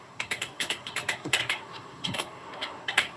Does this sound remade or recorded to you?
remade